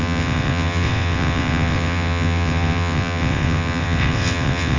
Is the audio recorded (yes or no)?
no